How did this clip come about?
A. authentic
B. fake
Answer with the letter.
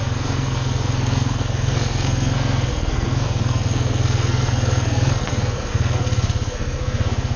B